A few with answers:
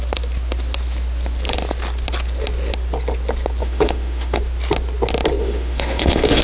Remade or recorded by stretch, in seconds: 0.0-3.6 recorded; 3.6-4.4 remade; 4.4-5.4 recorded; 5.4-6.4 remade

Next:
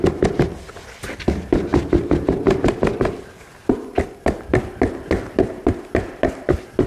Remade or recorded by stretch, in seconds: 0.0-6.9 recorded

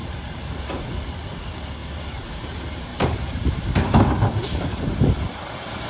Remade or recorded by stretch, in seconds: 0.0-0.6 remade; 0.6-1.8 recorded; 1.8-2.3 remade; 2.3-2.9 recorded; 2.9-3.6 remade; 3.6-4.4 recorded; 4.4-5.9 remade

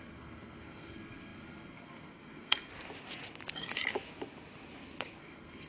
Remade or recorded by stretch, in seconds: 0.0-2.7 remade; 2.7-5.2 recorded; 5.2-5.7 remade

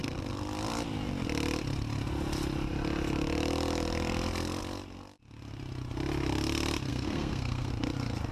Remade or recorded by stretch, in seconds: 0.0-6.9 recorded; 6.9-7.7 remade; 7.7-8.3 recorded